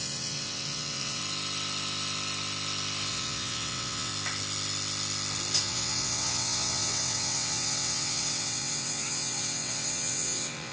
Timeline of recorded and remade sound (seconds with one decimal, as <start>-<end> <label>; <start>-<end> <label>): 0.0-1.2 remade; 1.2-3.1 recorded; 3.1-4.1 remade; 4.1-5.6 recorded; 5.6-10.7 remade